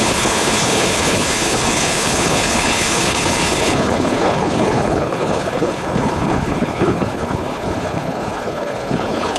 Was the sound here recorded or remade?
remade